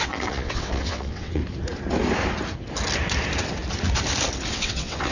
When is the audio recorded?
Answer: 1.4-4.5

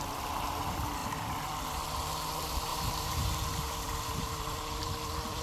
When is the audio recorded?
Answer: 0.0-2.7; 3.3-4.1; 4.8-5.4

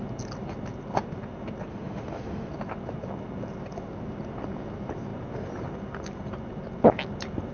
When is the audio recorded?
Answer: 0.0-1.7; 2.5-7.5

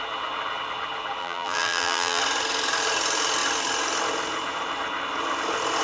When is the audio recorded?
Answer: 0.0-1.2; 2.2-5.8

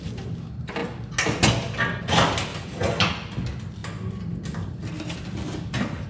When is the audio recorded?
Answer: 0.0-2.5; 3.1-6.1

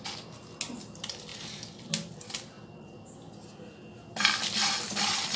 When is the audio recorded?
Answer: 0.0-1.3; 3.3-5.4